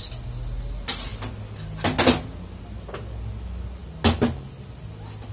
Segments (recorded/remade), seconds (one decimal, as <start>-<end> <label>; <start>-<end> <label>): 0.0-5.3 recorded